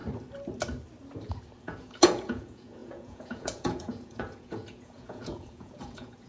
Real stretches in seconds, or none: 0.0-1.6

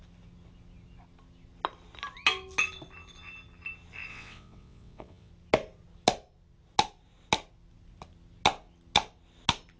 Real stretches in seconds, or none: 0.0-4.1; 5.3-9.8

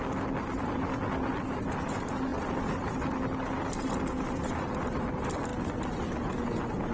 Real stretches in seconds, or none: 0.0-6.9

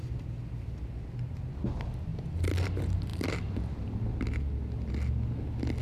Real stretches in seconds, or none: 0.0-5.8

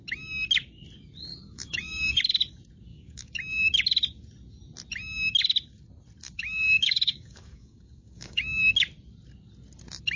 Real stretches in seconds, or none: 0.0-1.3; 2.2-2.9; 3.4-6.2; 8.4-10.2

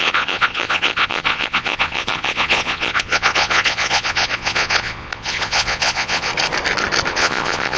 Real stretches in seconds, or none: 6.3-7.1

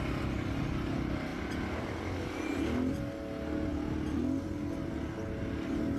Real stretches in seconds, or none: 0.0-6.0